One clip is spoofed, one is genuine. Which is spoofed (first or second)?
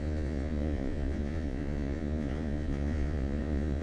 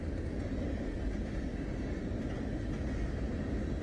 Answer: first